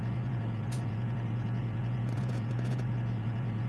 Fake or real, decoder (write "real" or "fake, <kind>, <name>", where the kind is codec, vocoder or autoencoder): fake, vocoder, Vocos